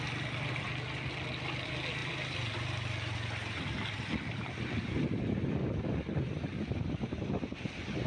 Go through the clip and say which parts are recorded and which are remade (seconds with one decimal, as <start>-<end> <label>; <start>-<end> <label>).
0.0-8.1 recorded